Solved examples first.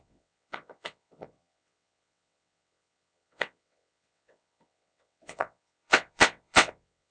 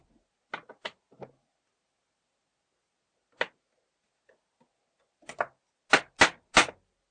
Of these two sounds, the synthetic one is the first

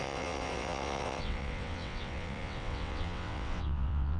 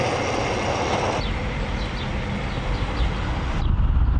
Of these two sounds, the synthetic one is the first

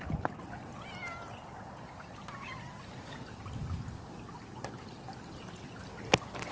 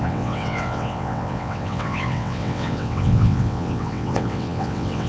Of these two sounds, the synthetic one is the second